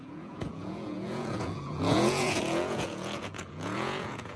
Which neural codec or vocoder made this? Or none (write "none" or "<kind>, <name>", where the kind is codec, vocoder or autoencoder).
vocoder, Vocos